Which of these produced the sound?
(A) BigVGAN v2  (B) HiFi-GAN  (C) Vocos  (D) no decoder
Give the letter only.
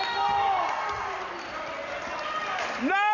D